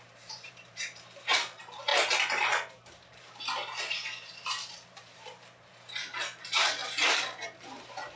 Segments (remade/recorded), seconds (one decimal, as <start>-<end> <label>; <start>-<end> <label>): 0.0-1.9 remade; 1.9-3.1 recorded; 3.1-8.2 remade